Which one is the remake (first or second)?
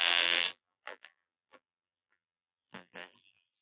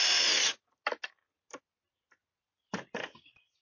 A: first